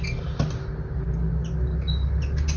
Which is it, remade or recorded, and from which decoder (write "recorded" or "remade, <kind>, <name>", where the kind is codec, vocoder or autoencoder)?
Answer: recorded